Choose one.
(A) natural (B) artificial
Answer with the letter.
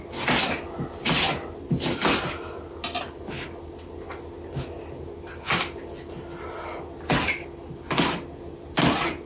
A